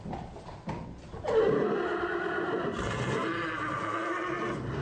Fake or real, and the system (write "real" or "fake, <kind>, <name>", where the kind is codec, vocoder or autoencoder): real